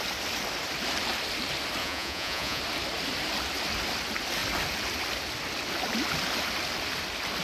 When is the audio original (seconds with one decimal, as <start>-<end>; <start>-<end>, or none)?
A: 0.0-1.8; 2.6-7.4